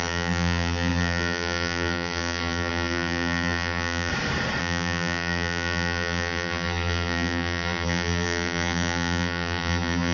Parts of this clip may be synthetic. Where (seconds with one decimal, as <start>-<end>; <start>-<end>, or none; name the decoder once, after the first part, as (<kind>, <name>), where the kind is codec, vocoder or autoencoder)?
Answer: 0.0-4.1 (vocoder, BigVGAN v2); 4.6-10.1